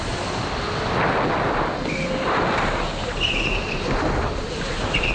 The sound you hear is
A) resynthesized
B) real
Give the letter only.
B